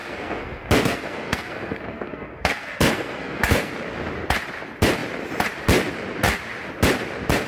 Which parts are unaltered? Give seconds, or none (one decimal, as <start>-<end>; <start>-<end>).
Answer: 3.7-7.5